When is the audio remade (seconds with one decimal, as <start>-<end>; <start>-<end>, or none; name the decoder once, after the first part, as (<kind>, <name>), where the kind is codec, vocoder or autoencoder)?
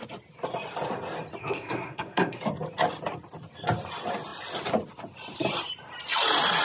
1.4-2.4 (codec, SNAC)